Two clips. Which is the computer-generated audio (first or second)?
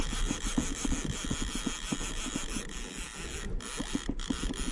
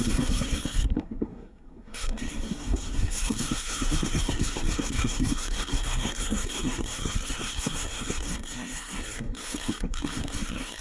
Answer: second